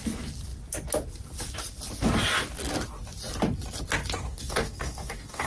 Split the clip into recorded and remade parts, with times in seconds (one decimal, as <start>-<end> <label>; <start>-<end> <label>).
0.0-4.2 recorded; 4.2-5.5 remade